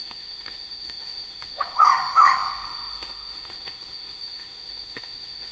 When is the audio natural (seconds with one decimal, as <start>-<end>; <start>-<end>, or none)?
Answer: none